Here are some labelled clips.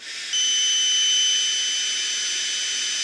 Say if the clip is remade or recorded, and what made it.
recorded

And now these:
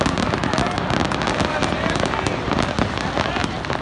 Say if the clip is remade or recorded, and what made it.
recorded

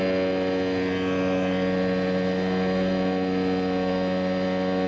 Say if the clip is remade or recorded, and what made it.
recorded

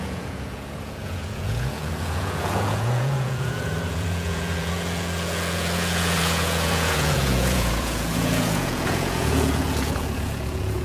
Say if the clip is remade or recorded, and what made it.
remade, vocoder, Vocos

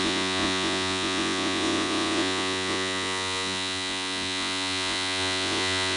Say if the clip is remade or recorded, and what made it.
remade, vocoder, Vocos